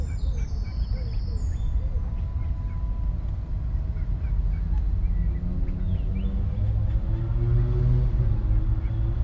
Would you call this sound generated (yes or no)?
no